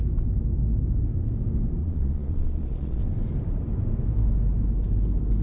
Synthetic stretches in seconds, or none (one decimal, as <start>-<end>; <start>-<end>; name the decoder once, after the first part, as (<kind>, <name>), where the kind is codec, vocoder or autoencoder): 1.8-3.0 (vocoder, Vocos)